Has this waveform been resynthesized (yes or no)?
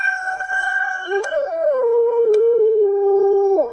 yes